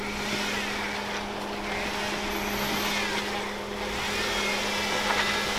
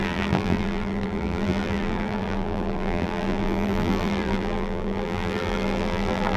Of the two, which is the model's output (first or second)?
second